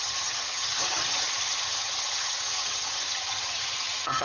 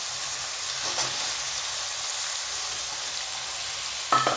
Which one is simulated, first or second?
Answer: first